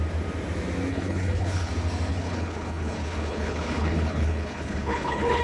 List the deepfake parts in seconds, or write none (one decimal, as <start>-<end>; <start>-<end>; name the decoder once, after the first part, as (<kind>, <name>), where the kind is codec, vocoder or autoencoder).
0.9-1.7 (codec, HILCodec); 2.1-5.4